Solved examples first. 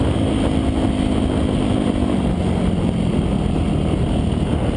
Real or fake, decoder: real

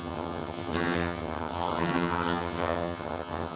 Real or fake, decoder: fake, vocoder, HiFi-GAN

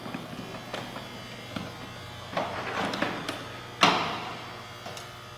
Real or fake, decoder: real